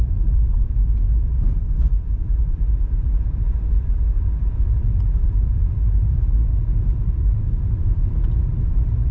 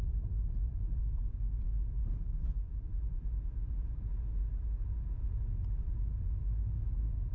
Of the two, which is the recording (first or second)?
second